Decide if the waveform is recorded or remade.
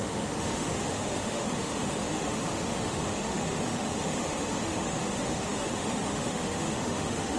remade